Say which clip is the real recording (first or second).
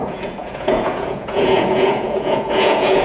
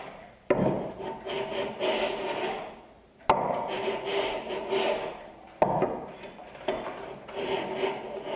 second